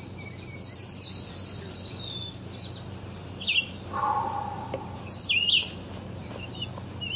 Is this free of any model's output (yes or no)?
yes